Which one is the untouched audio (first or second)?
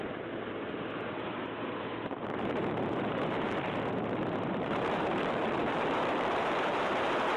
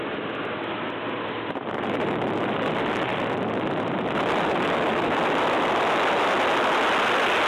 second